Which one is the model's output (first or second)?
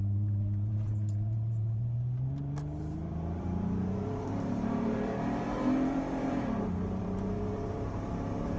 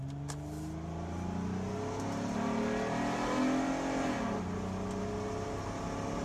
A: first